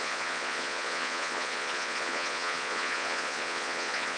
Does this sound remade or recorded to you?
remade